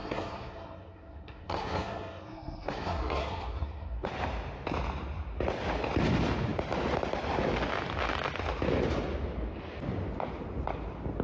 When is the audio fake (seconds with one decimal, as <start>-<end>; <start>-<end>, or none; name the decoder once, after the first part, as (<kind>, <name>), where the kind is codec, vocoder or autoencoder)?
0.0-4.1 (codec, SNAC)